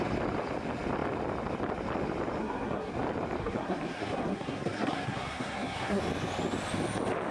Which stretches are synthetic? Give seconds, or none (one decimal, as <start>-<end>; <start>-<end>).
2.4-2.9; 3.4-6.0